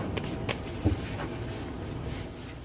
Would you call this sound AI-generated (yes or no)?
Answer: no